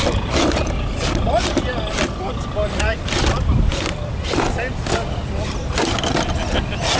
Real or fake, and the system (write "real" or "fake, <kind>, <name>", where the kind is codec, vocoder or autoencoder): real